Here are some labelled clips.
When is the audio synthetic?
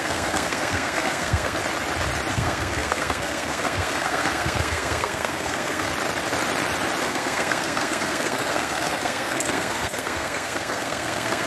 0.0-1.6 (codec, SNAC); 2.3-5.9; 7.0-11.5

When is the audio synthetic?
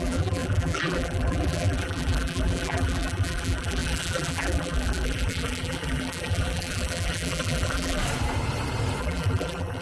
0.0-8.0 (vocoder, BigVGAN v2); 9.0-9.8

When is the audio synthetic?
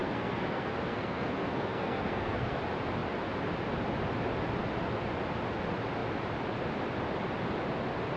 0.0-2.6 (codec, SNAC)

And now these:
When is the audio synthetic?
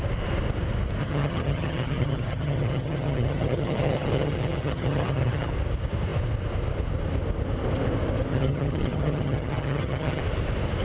1.0-5.5 (vocoder, HiFi-GAN); 8.3-10.2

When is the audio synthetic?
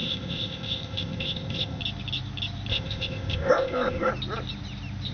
0.0-1.8 (codec, ZipCodec); 2.7-4.1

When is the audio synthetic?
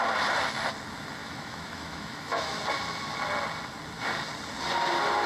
1.2-2.6 (autoencoder, DAC-VAE)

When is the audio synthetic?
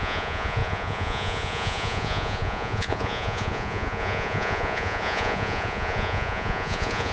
0.0-7.1 (vocoder, Vocos)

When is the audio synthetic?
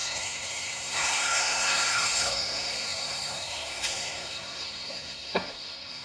0.0-6.0 (codec, SNAC)